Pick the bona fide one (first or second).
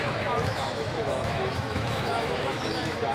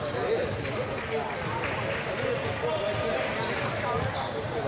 second